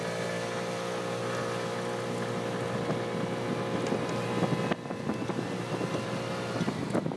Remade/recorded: recorded